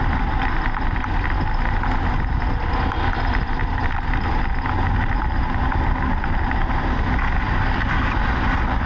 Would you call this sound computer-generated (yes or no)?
no